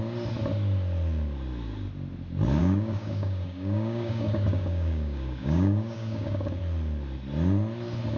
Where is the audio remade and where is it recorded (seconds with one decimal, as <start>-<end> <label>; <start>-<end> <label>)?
0.0-2.6 recorded; 2.6-6.6 remade; 6.6-8.2 recorded